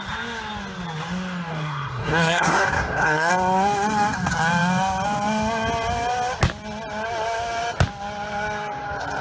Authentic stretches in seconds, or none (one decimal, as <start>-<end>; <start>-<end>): 0.0-1.5; 3.3-9.2